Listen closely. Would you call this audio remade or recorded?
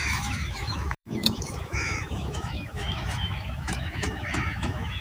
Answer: remade